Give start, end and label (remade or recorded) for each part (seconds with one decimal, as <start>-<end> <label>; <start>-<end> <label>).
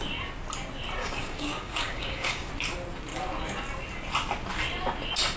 0.0-1.0 recorded; 1.0-2.5 remade; 2.5-5.4 recorded